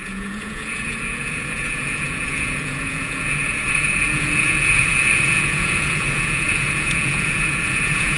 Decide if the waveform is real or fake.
fake